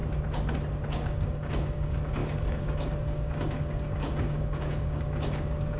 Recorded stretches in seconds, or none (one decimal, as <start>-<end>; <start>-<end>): 0.0-0.9